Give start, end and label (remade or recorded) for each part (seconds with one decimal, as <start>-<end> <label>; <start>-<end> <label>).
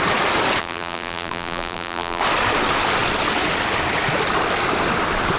0.0-0.6 recorded; 0.6-2.2 remade; 2.2-5.4 recorded